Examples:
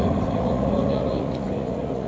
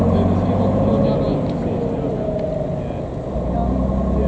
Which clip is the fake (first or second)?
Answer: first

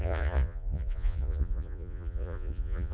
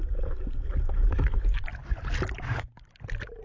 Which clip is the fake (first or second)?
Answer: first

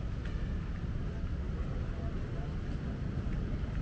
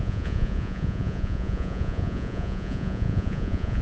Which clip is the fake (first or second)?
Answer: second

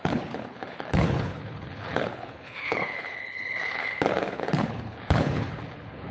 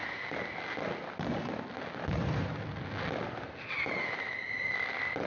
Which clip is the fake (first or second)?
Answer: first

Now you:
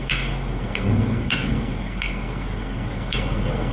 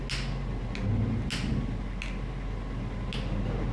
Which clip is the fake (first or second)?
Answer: first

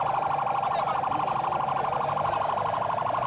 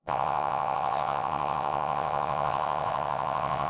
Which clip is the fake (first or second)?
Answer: second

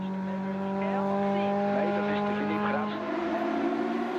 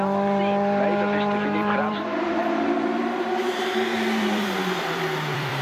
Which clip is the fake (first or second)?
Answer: second